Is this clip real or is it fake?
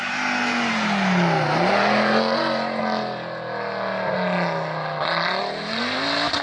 real